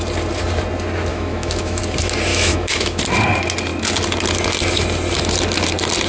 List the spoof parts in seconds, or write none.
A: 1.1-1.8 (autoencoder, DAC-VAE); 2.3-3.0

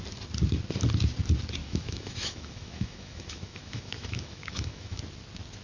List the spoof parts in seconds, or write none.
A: 1.6-5.0 (autoencoder, DAC-VAE)

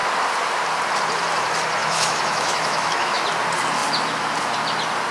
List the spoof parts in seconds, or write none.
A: 1.8-3.2 (autoencoder, DAC-VAE)

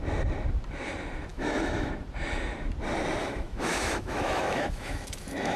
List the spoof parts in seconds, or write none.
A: 1.3-1.9 (autoencoder, DAC-VAE); 3.2-5.6

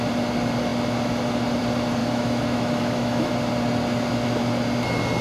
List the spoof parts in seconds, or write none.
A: 2.0-3.3 (autoencoder, DAC-VAE)

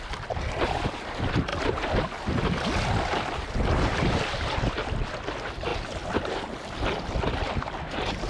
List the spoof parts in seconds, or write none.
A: none

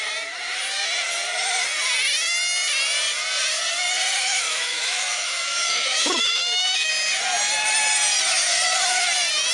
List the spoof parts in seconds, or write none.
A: 4.2-6.9 (autoencoder, DAC-VAE)

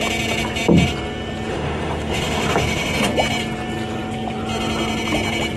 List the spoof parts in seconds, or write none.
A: 1.5-3.1 (autoencoder, DAC-VAE)